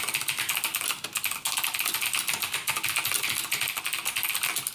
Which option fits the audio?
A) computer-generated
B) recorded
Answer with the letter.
B